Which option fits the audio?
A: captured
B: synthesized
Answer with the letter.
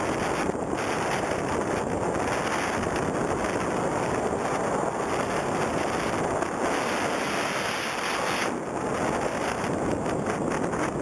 A